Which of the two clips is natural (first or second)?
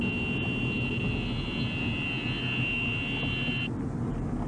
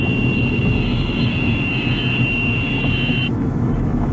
first